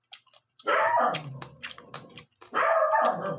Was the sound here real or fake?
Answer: real